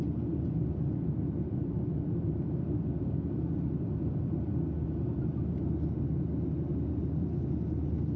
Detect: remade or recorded recorded